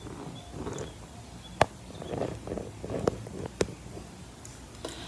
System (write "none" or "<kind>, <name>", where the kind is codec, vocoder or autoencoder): none